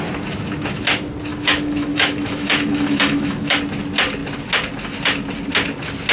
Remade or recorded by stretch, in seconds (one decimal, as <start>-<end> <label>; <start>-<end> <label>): 0.0-1.3 recorded; 1.3-3.6 remade; 3.6-6.1 recorded